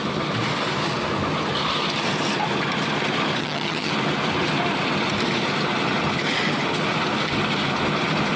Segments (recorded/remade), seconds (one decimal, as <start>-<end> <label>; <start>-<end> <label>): 0.0-3.4 recorded; 3.4-3.9 remade; 3.9-8.4 recorded